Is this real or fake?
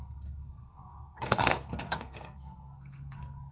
fake